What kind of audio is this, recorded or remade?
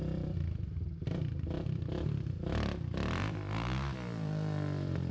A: remade